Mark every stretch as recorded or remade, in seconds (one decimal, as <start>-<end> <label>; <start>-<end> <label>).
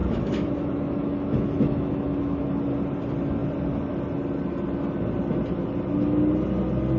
0.0-2.5 remade; 2.5-7.0 recorded